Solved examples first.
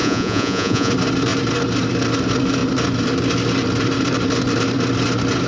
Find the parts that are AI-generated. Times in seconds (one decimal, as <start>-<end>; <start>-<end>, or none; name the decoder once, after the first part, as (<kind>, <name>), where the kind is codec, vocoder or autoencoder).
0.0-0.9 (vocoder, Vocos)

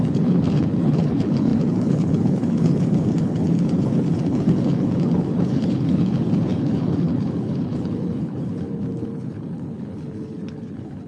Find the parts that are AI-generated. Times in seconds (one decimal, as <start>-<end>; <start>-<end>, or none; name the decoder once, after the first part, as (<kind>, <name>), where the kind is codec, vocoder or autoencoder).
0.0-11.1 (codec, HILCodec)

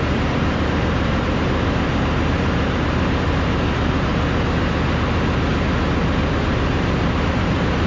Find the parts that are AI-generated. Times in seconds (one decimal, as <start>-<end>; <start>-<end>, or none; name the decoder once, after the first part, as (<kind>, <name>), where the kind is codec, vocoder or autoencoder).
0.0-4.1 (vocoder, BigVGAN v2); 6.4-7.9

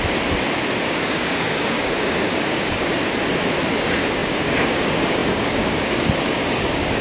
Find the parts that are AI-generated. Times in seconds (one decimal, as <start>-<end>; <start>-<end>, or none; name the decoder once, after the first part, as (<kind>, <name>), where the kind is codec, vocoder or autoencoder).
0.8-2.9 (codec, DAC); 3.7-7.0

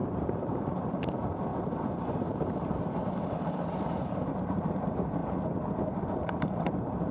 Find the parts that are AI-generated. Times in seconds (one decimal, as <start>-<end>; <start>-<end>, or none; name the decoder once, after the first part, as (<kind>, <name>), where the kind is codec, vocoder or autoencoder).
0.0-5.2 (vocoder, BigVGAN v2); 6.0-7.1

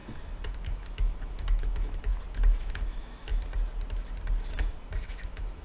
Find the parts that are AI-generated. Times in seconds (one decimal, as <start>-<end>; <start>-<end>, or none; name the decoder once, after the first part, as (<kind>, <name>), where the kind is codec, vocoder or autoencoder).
0.5-2.1 (autoencoder, DAC-VAE); 2.6-3.3; 5.0-5.6